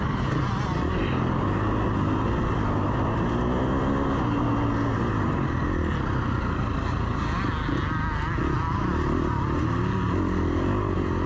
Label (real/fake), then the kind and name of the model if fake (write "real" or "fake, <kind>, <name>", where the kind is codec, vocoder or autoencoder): real